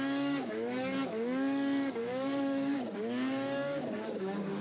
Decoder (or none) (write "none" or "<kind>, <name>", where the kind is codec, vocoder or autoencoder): codec, DAC